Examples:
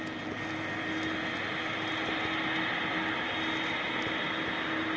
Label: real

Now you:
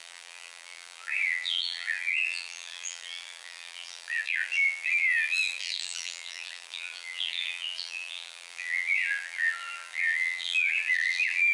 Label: fake